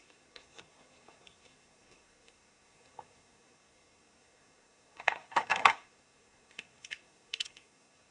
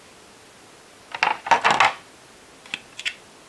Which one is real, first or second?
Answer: second